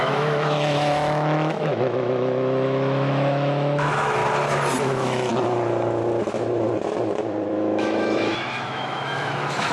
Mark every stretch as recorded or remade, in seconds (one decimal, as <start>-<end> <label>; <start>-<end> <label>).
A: 0.0-4.2 remade; 4.2-4.8 recorded; 4.8-5.3 remade; 5.3-7.5 recorded; 7.5-9.7 remade

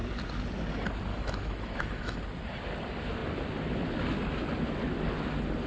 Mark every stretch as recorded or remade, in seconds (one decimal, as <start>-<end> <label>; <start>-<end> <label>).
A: 0.0-1.1 recorded; 1.1-2.2 remade; 2.2-5.7 recorded